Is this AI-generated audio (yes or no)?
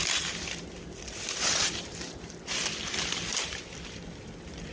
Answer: no